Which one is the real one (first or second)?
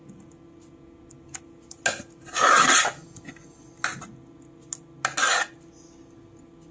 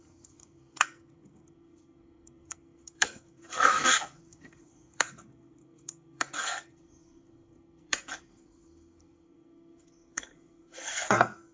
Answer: first